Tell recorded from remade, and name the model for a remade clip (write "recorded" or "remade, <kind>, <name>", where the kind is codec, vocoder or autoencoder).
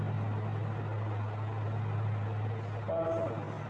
recorded